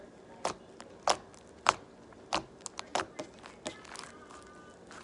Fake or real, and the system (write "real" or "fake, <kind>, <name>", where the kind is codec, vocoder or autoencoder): real